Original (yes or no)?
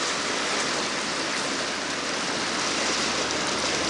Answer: yes